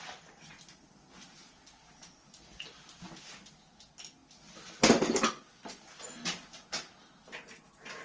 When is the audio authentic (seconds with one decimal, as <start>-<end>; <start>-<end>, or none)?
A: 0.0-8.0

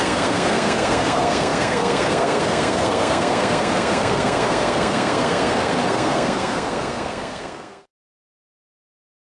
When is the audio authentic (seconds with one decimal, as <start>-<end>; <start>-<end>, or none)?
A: none

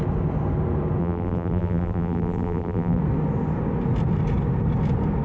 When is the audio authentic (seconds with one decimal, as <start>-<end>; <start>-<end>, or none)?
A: 0.0-1.0; 3.0-5.2

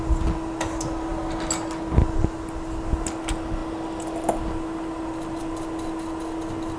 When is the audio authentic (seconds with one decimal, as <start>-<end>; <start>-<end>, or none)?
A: 0.0-6.8

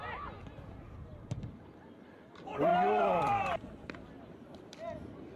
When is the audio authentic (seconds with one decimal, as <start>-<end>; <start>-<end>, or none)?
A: 0.0-2.7; 4.6-5.4

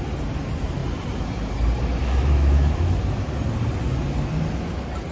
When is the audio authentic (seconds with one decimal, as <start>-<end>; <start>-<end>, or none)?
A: 0.0-2.0; 3.0-5.1

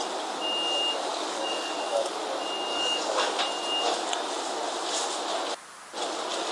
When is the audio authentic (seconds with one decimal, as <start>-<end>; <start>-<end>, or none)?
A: 0.0-1.1; 2.2-2.7; 3.4-6.5